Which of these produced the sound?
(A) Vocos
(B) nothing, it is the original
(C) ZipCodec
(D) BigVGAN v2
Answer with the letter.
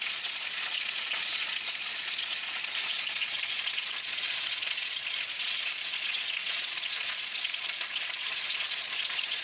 A